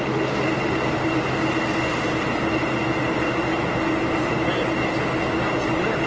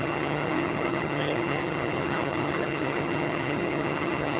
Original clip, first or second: first